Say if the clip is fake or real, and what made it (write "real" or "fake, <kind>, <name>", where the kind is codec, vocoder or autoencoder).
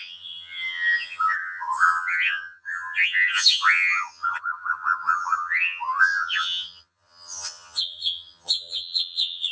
fake, vocoder, HiFi-GAN